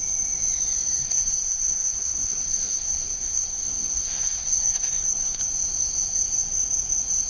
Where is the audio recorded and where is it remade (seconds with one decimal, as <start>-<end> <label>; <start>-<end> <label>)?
0.0-1.0 recorded; 1.0-5.4 remade; 5.4-7.3 recorded

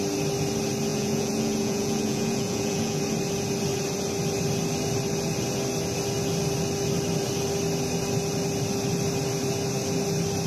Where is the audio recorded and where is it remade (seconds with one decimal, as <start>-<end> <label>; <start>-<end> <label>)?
0.0-0.9 recorded; 0.9-3.0 remade; 3.0-10.5 recorded

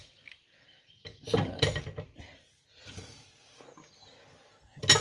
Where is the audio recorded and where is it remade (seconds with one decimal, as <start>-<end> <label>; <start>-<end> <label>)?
0.0-5.0 recorded

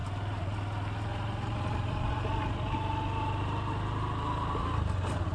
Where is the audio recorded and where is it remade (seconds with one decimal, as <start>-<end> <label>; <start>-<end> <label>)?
0.0-5.3 recorded

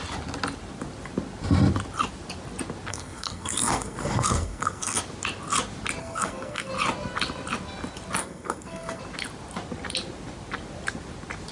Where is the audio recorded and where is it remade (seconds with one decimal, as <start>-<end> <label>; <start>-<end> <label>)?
0.0-2.9 recorded; 2.9-5.0 remade; 5.0-6.0 recorded; 6.0-6.7 remade; 6.7-8.2 recorded; 8.2-9.0 remade; 9.0-11.5 recorded

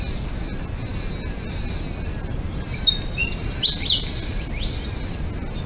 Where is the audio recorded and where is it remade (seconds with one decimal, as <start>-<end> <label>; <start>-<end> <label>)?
0.0-5.7 recorded

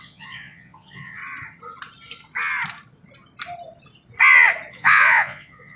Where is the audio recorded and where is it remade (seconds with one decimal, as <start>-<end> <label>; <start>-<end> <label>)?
0.0-1.2 remade; 1.2-4.7 recorded; 4.7-5.8 remade

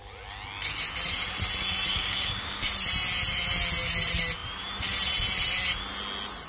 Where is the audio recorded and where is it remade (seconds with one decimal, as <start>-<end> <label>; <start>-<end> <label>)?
0.0-1.9 recorded; 1.9-2.6 remade; 2.6-6.5 recorded